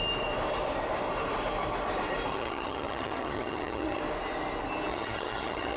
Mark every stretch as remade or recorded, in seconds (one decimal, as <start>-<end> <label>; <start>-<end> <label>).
0.0-2.3 recorded; 2.3-4.0 remade; 4.0-4.9 recorded; 4.9-5.8 remade